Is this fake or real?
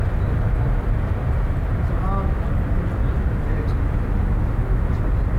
real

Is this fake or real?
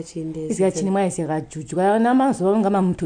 real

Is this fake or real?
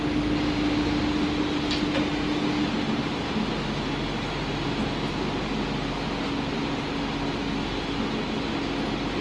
real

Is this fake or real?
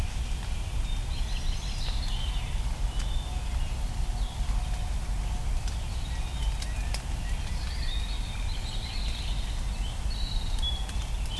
real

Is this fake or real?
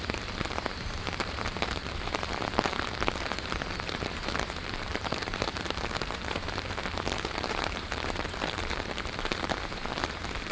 fake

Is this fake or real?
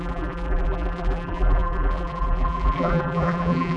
fake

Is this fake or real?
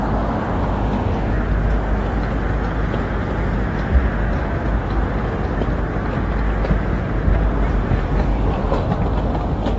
real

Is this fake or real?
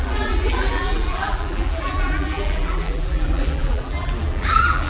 fake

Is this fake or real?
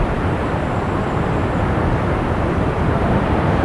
fake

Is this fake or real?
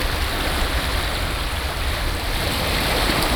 real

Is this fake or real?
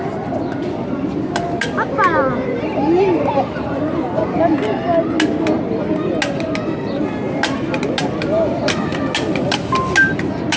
real